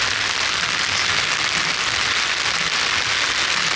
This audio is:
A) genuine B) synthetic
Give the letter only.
A